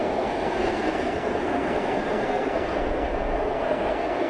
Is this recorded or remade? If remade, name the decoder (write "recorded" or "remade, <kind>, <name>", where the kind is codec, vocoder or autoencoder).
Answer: remade, codec, SNAC